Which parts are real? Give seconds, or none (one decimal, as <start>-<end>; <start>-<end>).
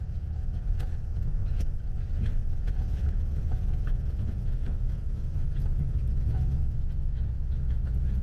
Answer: 1.4-2.7